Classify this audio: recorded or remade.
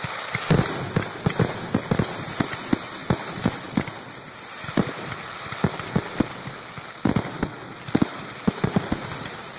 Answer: recorded